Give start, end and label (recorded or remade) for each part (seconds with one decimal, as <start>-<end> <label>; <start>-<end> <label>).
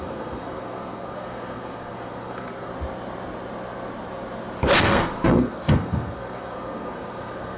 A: 0.0-2.7 remade; 2.7-4.8 recorded; 4.8-7.6 remade